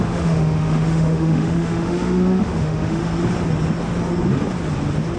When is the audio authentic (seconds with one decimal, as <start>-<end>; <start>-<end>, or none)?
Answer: 3.0-5.2